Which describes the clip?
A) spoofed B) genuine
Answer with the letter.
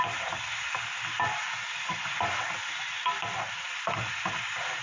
B